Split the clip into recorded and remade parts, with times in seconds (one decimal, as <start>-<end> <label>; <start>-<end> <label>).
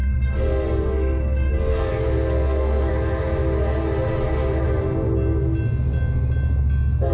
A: 0.0-2.9 remade; 2.9-7.1 recorded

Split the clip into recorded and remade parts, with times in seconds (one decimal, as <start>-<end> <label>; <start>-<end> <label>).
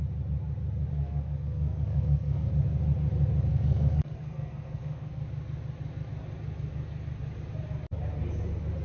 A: 0.0-0.9 recorded; 0.9-2.5 remade; 2.5-3.5 recorded; 3.5-5.2 remade; 5.2-8.8 recorded